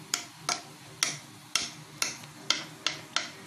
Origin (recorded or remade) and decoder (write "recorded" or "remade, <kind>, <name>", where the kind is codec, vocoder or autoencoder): recorded